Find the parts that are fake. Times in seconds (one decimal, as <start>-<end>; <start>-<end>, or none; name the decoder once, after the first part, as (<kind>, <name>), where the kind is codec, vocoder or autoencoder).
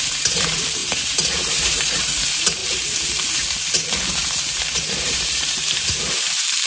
0.0-6.7 (vocoder, BigVGAN v2)